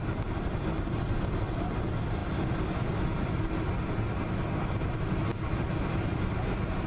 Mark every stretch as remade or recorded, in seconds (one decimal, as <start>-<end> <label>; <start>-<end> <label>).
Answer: 0.0-6.9 recorded